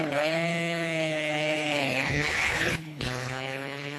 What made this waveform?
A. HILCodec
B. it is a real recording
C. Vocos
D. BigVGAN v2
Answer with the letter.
A